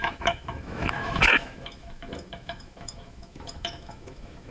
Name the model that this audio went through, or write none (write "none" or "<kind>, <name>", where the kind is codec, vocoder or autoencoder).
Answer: autoencoder, DAC-VAE